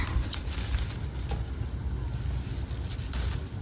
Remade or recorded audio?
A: recorded